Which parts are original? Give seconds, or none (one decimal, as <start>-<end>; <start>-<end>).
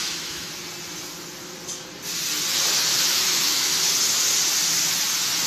0.5-2.9; 3.9-5.5